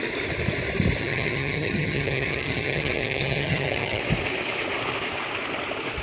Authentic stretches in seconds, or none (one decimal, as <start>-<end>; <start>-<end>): 0.0-1.0; 4.0-6.0